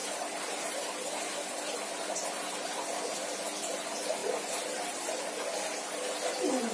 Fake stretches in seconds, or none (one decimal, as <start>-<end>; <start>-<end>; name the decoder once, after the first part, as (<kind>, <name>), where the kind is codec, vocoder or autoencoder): 0.0-0.7 (vocoder, BigVGAN v2); 4.2-5.3